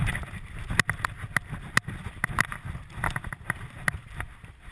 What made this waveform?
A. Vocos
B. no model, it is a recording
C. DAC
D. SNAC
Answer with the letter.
B